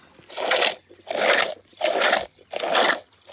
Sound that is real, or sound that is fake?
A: real